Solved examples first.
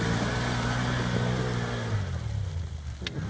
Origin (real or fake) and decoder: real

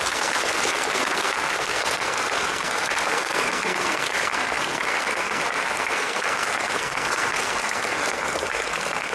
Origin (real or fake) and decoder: fake, codec, SNAC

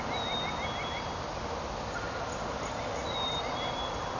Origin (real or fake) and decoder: real